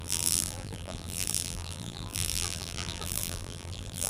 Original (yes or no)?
no